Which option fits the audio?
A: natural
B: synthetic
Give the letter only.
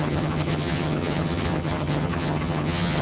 B